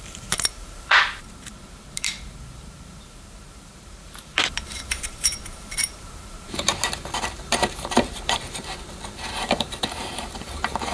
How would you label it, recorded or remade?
remade